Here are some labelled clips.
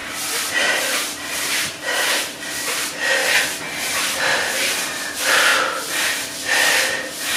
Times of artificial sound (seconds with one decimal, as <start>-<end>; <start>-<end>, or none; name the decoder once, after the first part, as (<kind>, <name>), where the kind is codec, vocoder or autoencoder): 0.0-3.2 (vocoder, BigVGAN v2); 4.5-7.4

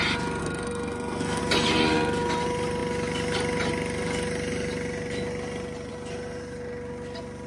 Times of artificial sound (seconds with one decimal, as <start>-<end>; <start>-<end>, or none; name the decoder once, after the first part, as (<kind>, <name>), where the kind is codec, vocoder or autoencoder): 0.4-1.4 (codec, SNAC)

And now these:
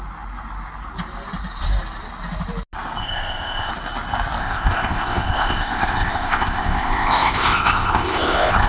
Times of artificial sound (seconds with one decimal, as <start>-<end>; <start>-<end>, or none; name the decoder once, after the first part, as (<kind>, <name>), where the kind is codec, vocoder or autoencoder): 3.0-3.7 (codec, ZipCodec); 4.4-8.7

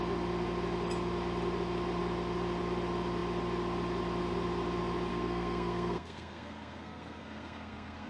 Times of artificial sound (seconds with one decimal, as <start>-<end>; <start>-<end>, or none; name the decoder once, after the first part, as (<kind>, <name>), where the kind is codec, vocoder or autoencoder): 5.1-8.1 (codec, SNAC)

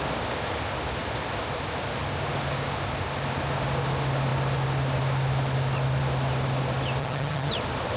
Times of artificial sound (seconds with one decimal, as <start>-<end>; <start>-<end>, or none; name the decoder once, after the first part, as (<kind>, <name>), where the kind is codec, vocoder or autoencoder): 7.0-7.5 (vocoder, HiFi-GAN)